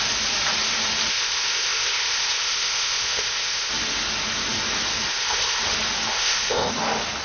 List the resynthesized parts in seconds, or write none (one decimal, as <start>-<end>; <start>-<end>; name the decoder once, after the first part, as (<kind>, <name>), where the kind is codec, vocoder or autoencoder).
1.1-3.7 (codec, ZipCodec); 5.1-5.6; 6.1-6.7